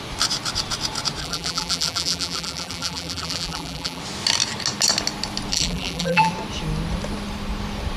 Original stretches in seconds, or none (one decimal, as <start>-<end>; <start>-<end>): 0.0-1.2; 4.0-5.5; 6.3-8.0